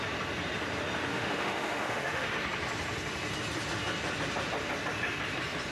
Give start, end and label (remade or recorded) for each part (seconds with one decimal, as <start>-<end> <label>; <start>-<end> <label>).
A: 0.0-1.1 recorded; 1.1-2.3 remade; 2.3-5.7 recorded